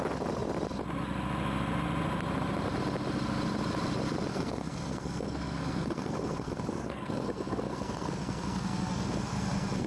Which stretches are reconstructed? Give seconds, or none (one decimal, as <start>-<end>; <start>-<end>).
4.3-9.9